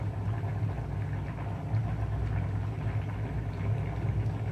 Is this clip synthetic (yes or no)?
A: no